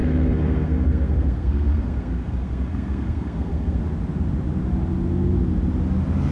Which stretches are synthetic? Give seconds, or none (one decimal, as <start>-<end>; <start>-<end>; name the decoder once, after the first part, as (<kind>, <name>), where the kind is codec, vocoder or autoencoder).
0.0-3.8 (codec, SNAC)